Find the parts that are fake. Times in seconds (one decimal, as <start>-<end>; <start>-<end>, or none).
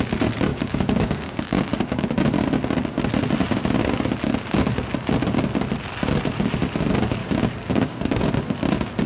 0.5-2.1; 7.2-8.2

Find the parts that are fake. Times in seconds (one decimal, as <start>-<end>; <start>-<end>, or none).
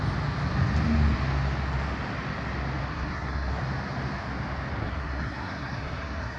2.9-3.6; 4.8-6.4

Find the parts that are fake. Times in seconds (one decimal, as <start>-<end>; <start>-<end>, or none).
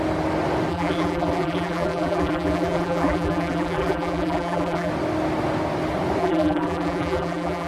0.7-4.9; 6.2-7.7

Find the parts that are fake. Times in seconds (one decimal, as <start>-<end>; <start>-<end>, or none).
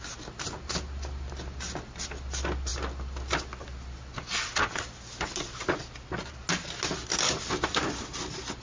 none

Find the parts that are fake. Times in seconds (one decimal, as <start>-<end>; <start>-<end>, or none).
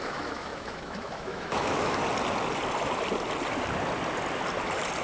0.0-2.0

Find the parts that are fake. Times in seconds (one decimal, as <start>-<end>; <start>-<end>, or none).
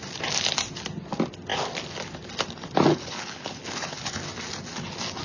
2.9-4.2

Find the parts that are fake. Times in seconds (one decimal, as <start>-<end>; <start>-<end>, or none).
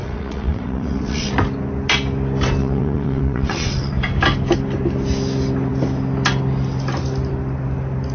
0.0-1.3; 2.6-3.9